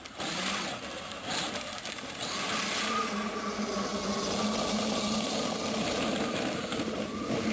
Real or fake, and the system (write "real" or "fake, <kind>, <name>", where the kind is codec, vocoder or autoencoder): real